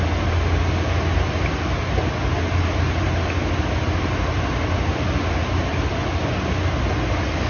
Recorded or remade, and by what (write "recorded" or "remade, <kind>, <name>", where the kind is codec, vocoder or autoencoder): recorded